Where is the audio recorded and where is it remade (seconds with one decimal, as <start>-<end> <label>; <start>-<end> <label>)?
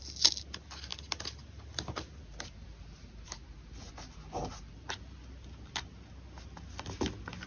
0.0-7.5 recorded